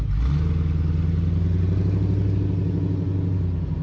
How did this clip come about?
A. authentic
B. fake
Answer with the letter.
A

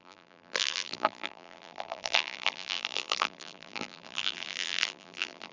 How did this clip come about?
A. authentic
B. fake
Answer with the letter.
B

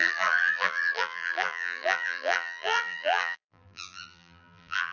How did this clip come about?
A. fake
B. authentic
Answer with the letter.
A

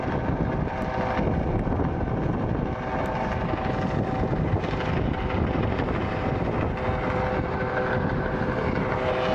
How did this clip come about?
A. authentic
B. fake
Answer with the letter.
A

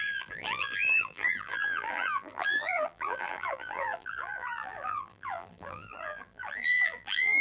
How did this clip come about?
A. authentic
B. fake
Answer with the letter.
B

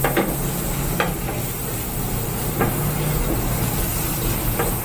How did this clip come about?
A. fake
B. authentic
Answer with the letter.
B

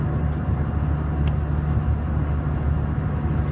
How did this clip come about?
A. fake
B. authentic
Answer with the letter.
B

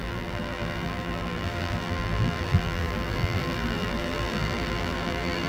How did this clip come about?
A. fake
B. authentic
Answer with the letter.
A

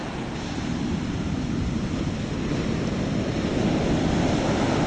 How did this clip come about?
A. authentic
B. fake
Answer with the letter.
A